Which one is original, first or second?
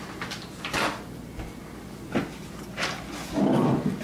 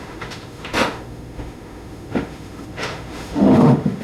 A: first